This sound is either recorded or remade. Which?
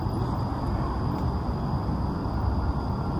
recorded